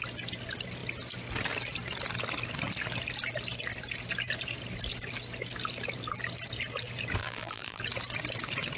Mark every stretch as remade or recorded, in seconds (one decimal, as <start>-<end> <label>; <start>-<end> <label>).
0.0-7.2 recorded; 7.2-7.8 remade; 7.8-8.8 recorded